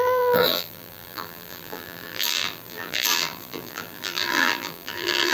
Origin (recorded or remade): remade